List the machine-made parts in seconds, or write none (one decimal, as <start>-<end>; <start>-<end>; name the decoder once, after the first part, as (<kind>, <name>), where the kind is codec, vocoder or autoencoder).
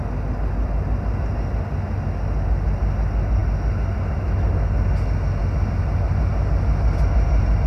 none